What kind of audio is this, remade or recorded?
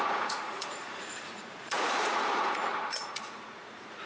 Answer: remade